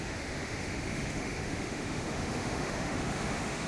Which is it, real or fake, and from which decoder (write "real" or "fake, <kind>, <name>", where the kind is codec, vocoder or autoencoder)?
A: fake, autoencoder, DAC-VAE